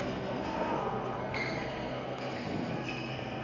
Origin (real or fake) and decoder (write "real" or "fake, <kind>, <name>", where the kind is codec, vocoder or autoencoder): fake, codec, SNAC